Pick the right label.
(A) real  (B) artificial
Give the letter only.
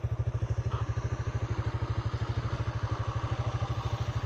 A